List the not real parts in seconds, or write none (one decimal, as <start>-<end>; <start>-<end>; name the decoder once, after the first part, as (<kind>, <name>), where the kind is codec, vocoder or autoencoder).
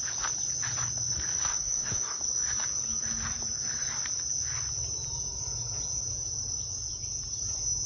1.5-2.2 (codec, SNAC)